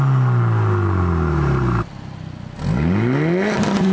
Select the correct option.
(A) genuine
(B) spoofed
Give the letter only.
A